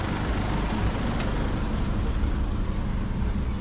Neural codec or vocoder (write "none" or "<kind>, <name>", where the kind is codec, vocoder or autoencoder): none